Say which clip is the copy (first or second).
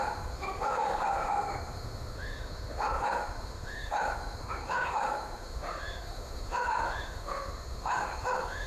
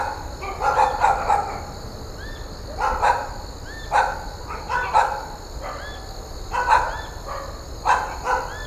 first